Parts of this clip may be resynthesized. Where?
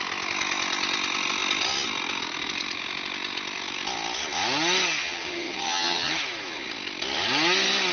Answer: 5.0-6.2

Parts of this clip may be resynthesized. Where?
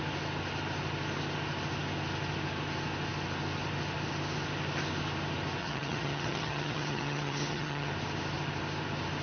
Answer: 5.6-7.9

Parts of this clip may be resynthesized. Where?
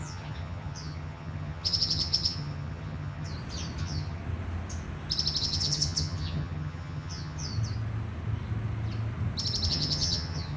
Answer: 0.0-3.3; 3.8-4.2; 5.4-7.5; 9.7-10.6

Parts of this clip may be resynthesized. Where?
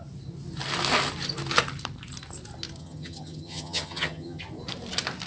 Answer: 2.8-4.4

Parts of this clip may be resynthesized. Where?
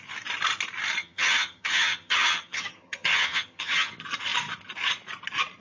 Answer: 1.0-3.9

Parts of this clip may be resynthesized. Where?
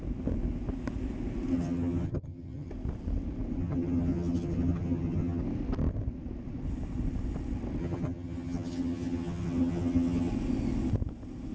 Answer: 1.5-2.7; 3.6-5.4; 7.8-10.3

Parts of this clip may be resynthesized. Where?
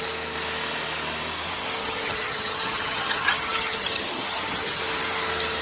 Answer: 1.8-4.8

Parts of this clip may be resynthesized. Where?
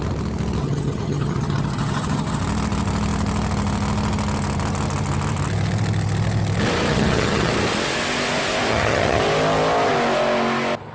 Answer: 0.6-2.4; 6.9-7.5; 8.7-9.2